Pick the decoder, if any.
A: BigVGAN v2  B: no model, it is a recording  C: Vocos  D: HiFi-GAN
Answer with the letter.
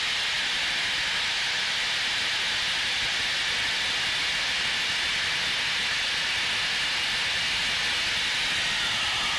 B